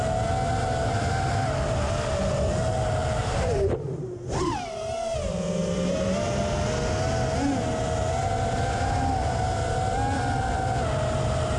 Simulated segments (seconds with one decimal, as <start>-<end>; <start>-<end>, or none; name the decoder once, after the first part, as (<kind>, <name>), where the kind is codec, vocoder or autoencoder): 3.0-6.4 (vocoder, BigVGAN v2)